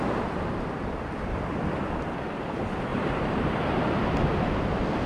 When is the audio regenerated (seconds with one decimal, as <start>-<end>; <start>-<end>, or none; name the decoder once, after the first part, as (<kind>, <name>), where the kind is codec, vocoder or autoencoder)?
2.9-4.1 (vocoder, BigVGAN v2)